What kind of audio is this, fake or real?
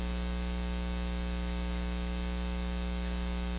real